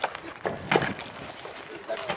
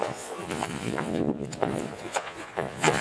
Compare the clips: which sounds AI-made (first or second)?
second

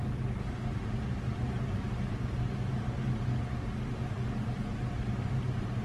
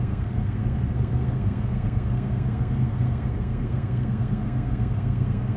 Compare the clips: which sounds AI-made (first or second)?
second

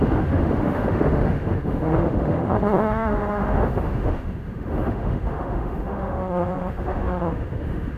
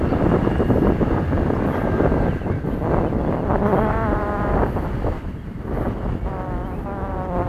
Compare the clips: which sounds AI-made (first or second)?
first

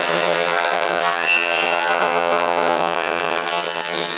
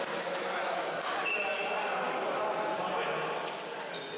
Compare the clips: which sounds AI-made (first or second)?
first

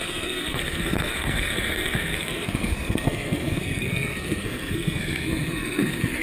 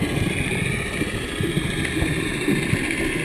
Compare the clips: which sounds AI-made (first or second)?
first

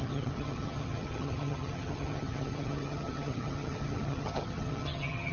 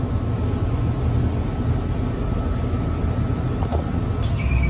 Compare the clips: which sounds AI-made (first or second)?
first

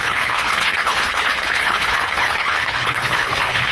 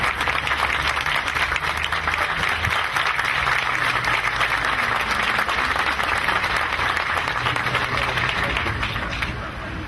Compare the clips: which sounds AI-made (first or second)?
first